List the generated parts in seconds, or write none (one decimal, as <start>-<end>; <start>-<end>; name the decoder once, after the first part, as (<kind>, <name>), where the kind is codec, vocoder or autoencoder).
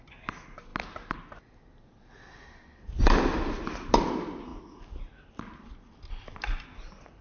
none